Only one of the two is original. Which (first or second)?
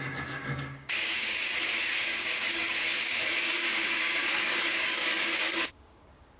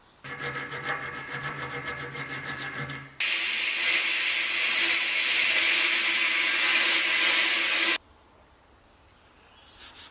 second